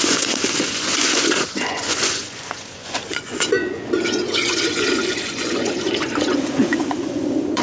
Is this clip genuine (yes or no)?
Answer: no